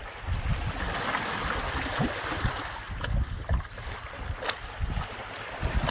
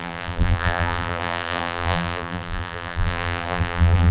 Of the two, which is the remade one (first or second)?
second